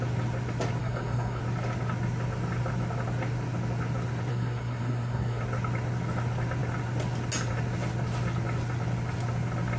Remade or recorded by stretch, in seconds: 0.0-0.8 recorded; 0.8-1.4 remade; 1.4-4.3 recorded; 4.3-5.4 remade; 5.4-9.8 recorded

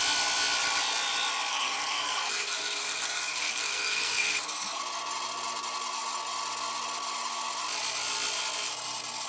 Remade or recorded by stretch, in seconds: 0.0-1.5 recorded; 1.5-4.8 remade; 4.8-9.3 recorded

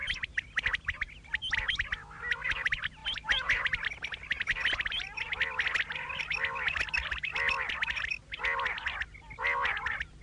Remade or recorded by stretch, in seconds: 0.0-10.2 recorded

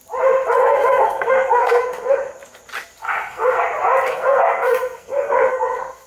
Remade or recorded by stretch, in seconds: 0.0-0.6 recorded; 0.6-2.3 remade; 2.3-3.0 recorded; 3.0-3.6 remade; 3.6-4.1 recorded; 4.1-6.1 remade